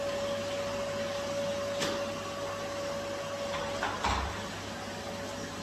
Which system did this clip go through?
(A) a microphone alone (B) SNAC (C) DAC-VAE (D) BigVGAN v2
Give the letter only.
A